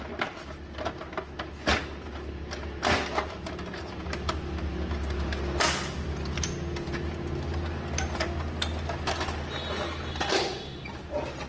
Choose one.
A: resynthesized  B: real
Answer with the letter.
B